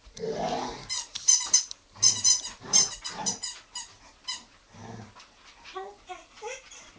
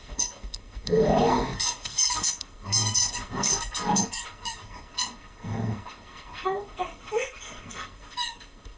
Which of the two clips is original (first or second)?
first